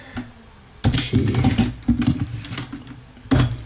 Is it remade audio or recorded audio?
recorded